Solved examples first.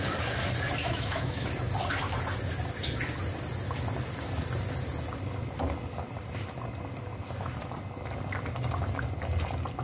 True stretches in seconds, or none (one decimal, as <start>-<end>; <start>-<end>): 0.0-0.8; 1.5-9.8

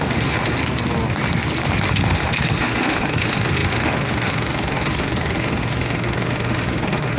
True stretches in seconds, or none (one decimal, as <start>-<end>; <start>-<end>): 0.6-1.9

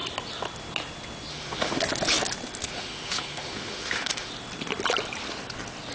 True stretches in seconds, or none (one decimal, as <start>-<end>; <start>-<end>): 0.0-1.3; 1.8-2.6; 4.3-5.9

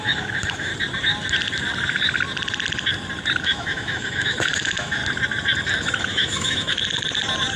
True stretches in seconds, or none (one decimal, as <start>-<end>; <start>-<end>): 0.7-3.4; 5.0-6.0; 6.8-7.6